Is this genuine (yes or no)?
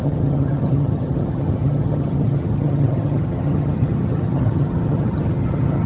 no